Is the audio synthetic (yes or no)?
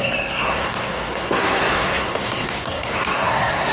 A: yes